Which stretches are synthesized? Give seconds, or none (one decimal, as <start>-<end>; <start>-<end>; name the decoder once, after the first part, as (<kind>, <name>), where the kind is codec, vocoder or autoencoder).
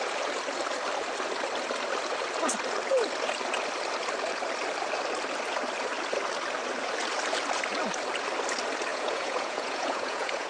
8.9-10.5 (vocoder, Vocos)